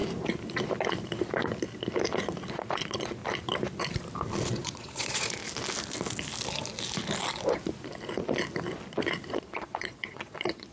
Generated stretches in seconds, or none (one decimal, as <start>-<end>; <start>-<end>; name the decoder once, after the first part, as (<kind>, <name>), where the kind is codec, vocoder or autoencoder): 2.5-3.2 (vocoder, Vocos); 4.3-5.4; 9.3-10.7